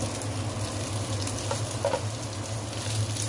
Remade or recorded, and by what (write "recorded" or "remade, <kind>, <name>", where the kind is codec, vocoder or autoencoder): recorded